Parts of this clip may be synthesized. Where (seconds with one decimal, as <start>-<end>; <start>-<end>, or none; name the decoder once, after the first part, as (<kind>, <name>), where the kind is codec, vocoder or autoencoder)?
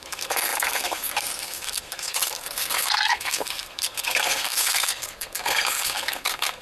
0.0-6.6 (codec, SNAC)